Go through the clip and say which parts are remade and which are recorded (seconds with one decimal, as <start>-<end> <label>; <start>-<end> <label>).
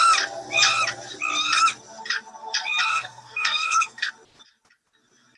0.0-2.9 recorded; 2.9-4.1 remade; 4.1-5.4 recorded